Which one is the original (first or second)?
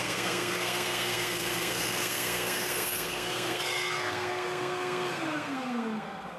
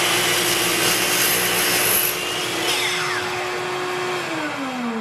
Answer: second